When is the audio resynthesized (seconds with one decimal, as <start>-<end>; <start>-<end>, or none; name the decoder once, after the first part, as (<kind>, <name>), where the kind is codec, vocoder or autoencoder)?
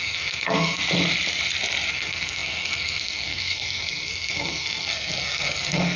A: 0.0-0.8 (codec, SNAC); 1.9-6.0